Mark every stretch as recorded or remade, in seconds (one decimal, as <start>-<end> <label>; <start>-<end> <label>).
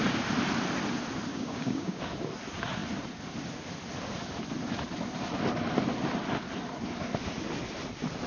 0.0-1.3 recorded; 1.3-2.0 remade; 2.0-8.3 recorded